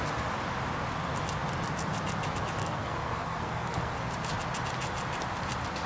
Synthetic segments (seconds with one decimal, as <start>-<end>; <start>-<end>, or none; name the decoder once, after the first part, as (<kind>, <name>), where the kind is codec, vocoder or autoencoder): 2.6-4.1 (codec, SNAC)